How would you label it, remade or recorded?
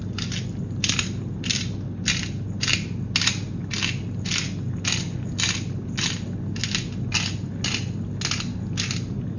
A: recorded